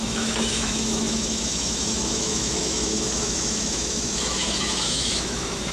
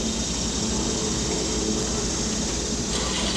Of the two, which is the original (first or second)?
second